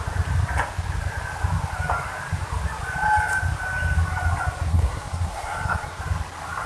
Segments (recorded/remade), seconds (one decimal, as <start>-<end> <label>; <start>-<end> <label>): 0.0-4.7 recorded; 4.7-6.0 remade; 6.0-6.7 recorded